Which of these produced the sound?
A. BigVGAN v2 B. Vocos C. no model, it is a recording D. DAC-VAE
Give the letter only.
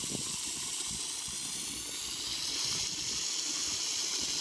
C